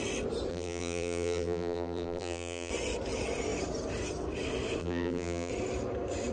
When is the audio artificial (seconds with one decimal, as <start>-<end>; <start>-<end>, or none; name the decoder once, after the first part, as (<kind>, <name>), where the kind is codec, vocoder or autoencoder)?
0.5-2.7 (vocoder, BigVGAN v2); 4.8-5.5